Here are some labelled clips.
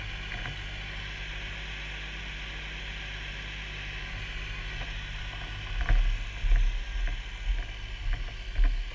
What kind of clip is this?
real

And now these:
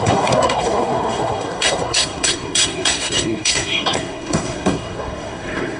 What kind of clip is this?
fake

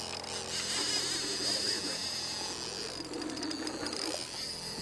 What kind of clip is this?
real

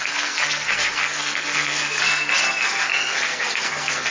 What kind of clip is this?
fake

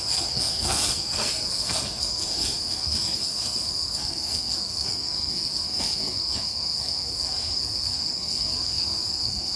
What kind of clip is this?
fake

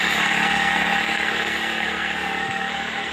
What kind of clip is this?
fake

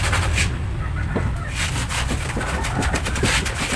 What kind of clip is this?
real